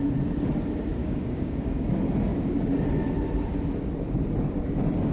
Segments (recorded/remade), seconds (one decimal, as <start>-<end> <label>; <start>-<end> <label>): 0.0-1.0 recorded; 1.0-1.9 remade; 1.9-5.1 recorded